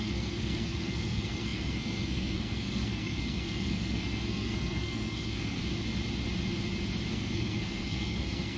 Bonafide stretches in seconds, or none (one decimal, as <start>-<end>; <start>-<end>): 5.6-7.1